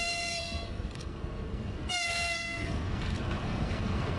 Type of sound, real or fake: fake